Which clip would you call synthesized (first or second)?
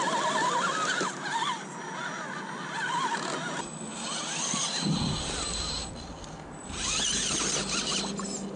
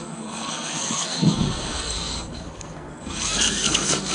second